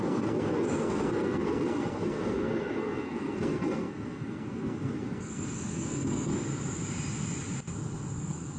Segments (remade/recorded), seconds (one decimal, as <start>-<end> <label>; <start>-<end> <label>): 0.0-6.3 remade; 6.3-8.2 recorded; 8.2-8.6 remade